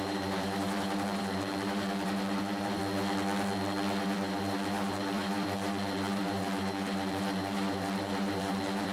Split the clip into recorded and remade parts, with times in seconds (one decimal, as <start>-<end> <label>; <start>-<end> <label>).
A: 0.0-2.8 remade; 2.8-4.0 recorded; 4.0-8.9 remade